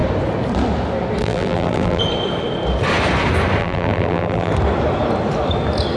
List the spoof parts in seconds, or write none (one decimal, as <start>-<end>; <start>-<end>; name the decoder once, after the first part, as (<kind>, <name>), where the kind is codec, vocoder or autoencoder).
1.2-2.0 (vocoder, BigVGAN v2); 3.6-4.5